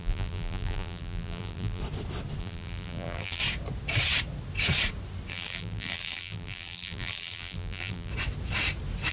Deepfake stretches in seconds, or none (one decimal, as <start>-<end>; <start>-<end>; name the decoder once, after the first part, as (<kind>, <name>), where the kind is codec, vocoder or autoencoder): 0.0-1.8 (vocoder, BigVGAN v2); 2.4-3.4; 5.3-8.1